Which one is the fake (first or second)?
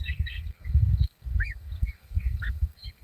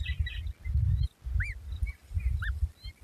first